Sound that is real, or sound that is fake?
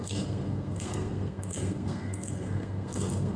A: fake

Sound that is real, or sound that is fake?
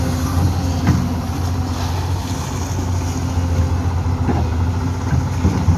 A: real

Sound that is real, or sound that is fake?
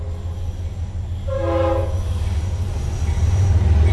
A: real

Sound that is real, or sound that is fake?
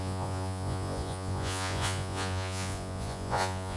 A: fake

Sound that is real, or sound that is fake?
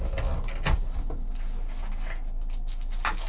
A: real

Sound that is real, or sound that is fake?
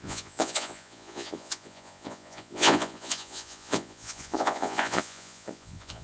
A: fake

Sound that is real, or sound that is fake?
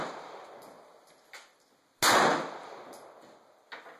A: real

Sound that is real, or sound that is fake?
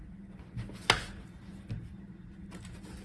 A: real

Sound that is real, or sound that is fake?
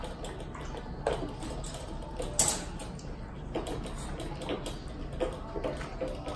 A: real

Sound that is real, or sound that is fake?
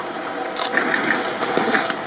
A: real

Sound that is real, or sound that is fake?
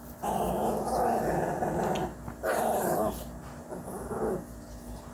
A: real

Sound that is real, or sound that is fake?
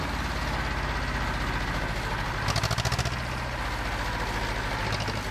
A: real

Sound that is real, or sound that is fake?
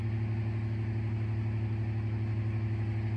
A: real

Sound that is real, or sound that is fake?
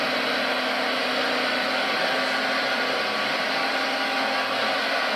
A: real